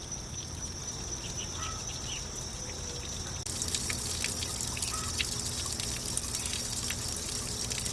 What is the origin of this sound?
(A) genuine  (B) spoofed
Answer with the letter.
A